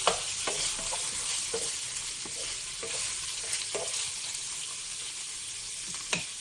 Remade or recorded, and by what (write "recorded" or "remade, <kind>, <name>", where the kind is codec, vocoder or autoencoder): recorded